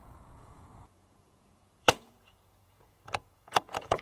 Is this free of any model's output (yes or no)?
no